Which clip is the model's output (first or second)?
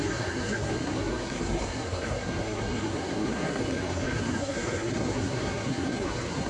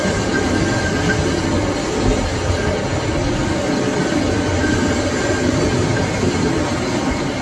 first